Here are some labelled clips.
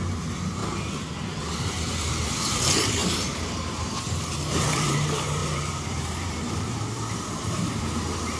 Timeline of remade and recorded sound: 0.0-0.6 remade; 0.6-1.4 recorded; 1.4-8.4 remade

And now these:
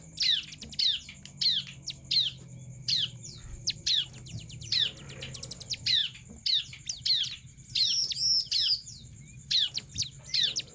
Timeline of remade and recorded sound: 0.0-2.8 recorded; 2.8-3.8 remade; 3.8-10.7 recorded